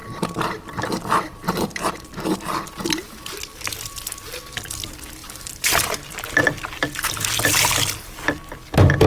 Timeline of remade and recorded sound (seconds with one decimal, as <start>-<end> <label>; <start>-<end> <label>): 0.0-9.1 recorded